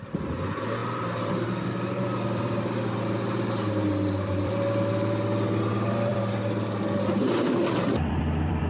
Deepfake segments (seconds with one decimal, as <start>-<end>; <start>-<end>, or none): 0.0-8.7